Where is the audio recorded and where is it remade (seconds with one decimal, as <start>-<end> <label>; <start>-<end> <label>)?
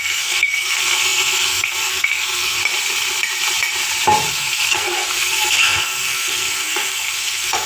0.0-2.6 remade; 2.6-4.3 recorded; 4.3-7.7 remade